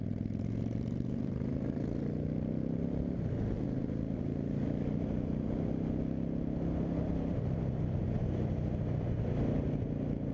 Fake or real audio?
real